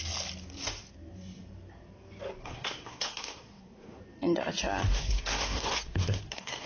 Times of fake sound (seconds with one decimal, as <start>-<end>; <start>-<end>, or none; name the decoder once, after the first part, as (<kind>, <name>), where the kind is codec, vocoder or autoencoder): 2.4-4.0 (codec, SNAC); 4.8-6.7